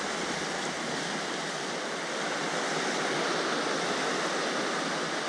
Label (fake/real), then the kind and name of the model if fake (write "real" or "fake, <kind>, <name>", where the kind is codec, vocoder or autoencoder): real